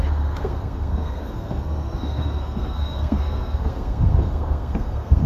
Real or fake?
fake